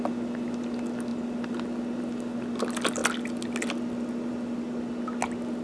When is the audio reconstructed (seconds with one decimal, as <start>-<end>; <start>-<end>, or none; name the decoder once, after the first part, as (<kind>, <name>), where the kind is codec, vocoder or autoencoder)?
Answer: none